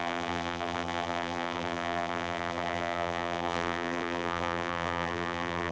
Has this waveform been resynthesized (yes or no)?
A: yes